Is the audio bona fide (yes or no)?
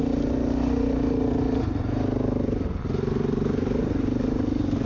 yes